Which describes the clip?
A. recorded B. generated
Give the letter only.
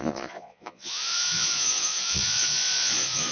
B